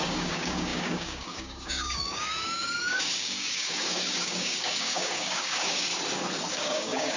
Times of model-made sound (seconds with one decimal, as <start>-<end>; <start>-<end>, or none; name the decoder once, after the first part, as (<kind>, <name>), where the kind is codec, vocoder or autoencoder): 0.0-5.9 (codec, DAC); 6.5-7.2